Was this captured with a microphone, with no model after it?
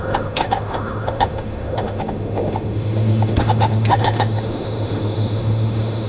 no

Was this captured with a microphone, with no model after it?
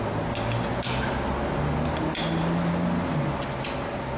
yes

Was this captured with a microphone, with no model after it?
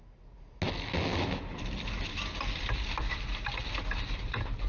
yes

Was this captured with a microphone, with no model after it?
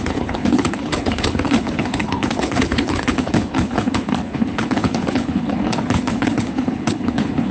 no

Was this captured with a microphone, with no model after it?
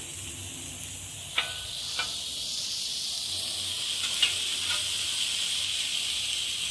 yes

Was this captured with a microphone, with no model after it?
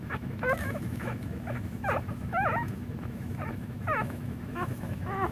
no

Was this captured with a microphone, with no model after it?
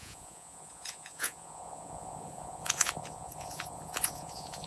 no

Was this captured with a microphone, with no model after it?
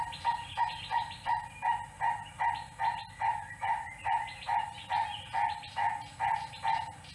yes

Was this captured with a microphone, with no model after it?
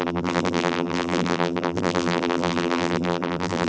no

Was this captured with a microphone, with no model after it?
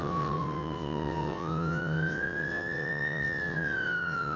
no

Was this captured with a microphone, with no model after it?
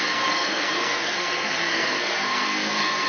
no